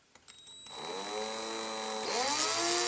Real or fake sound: real